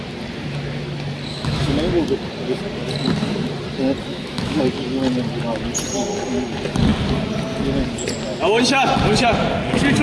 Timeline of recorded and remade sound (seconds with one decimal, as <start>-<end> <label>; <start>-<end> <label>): 0.0-1.3 recorded; 1.3-1.9 remade; 1.9-4.1 recorded; 4.1-4.6 remade; 4.6-10.0 recorded